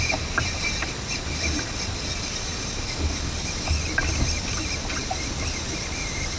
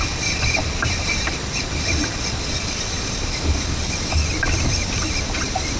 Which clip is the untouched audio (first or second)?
first